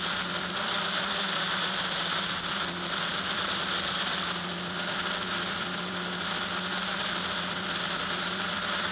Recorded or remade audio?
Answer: remade